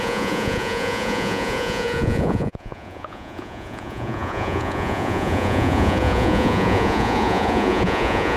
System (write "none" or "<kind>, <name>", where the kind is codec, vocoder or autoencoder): vocoder, Vocos